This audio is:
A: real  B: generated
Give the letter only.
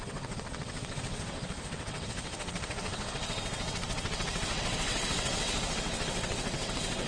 B